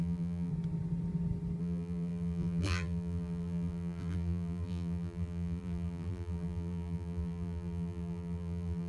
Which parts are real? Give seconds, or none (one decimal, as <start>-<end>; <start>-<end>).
0.5-1.6